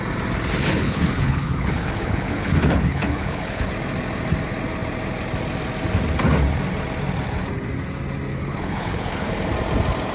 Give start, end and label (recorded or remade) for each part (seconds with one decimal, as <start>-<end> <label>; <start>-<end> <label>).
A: 0.0-0.6 recorded; 0.6-3.7 remade; 3.7-8.3 recorded; 8.3-9.3 remade; 9.3-10.1 recorded